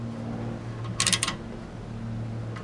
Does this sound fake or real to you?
real